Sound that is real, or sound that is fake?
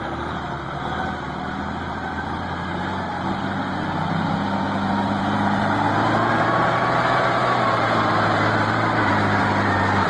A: fake